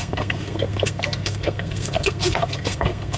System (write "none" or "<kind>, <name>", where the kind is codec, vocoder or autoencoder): codec, SNAC